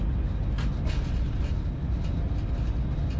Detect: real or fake real